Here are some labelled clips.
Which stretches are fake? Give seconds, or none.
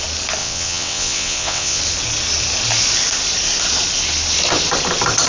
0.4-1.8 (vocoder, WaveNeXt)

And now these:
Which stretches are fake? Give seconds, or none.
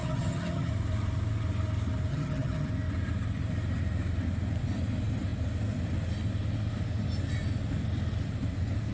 0.0-0.7 (vocoder, HiFi-GAN); 2.1-2.7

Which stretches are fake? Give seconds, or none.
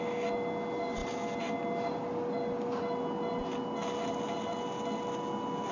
none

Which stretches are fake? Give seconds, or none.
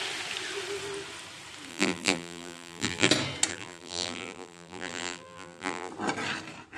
1.7-3.1 (vocoder, BigVGAN v2); 3.5-5.9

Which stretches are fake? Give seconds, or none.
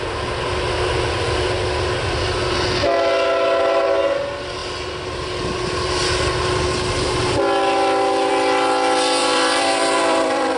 9.2-10.6 (vocoder, BigVGAN v2)